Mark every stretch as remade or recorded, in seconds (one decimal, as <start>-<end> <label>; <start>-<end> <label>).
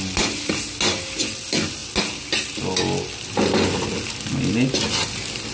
0.0-5.5 recorded